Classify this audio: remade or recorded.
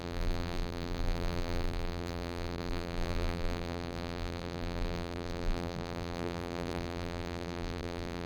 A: remade